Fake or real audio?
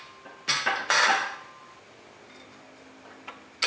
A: real